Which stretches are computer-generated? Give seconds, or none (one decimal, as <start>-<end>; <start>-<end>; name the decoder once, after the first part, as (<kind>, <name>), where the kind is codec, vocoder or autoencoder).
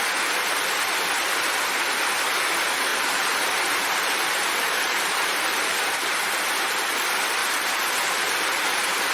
2.9-6.4 (vocoder, BigVGAN v2); 7.4-9.1